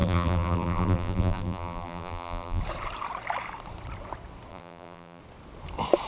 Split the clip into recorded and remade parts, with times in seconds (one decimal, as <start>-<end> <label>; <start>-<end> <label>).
0.0-2.6 remade; 2.6-4.5 recorded; 4.5-5.2 remade; 5.2-6.1 recorded